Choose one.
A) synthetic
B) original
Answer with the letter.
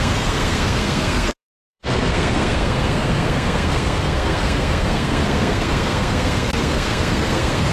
A